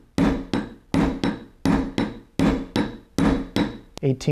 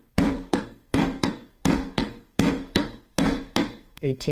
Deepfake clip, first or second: second